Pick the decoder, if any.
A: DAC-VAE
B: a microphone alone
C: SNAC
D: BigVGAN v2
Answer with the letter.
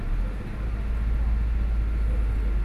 B